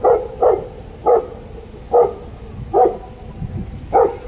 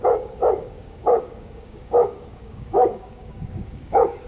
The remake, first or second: second